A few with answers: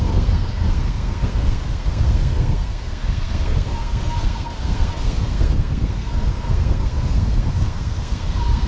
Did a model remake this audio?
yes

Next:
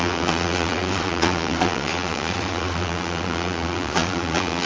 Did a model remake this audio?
yes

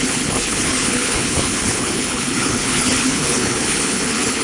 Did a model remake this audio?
yes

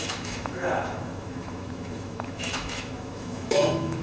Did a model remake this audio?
yes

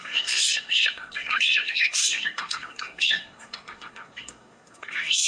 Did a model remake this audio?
yes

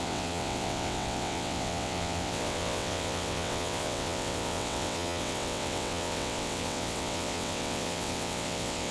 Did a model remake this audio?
yes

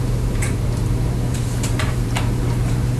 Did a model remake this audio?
yes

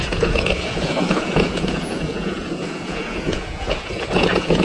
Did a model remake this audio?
yes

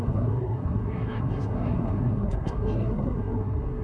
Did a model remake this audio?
yes